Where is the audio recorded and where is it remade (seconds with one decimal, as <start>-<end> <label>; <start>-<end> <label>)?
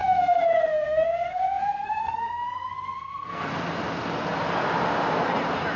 0.0-3.5 remade; 3.5-5.8 recorded